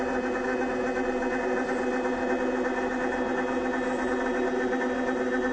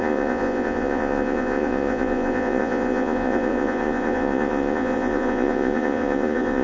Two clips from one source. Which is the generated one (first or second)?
second